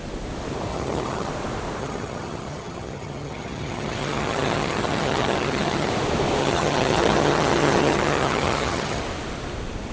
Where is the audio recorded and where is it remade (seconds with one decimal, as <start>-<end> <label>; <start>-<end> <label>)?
0.0-0.7 recorded; 0.7-1.3 remade; 1.3-1.8 recorded; 1.8-5.9 remade; 5.9-6.4 recorded; 6.4-9.0 remade; 9.0-9.9 recorded